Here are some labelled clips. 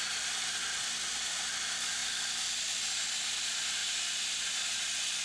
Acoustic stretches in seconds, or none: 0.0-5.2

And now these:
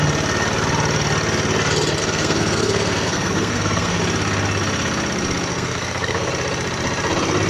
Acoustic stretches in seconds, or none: 0.0-2.0; 4.0-5.5; 6.3-7.5